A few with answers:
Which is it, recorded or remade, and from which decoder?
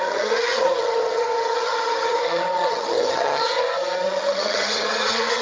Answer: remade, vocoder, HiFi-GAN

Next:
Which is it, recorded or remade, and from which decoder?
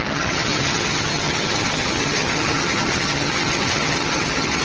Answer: remade, vocoder, HiFi-GAN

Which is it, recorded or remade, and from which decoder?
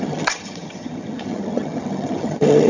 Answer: remade, vocoder, HiFi-GAN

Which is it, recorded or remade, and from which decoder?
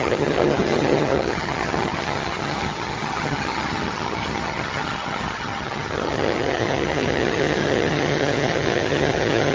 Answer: remade, vocoder, HiFi-GAN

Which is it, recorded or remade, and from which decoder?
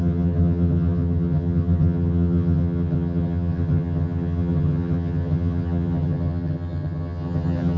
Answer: remade, vocoder, HiFi-GAN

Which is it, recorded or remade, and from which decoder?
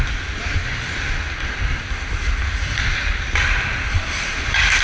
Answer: recorded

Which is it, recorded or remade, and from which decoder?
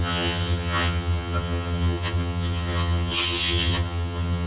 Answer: remade, vocoder, HiFi-GAN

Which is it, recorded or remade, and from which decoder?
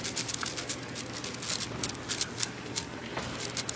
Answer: recorded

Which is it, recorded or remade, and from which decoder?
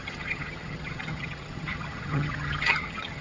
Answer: remade, vocoder, HiFi-GAN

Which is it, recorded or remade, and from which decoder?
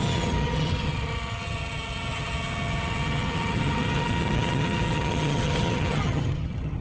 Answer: remade, vocoder, HiFi-GAN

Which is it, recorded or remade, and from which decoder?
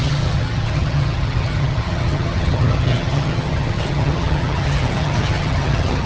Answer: remade, vocoder, HiFi-GAN